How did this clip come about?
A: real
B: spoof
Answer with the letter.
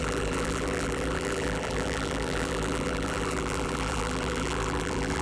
B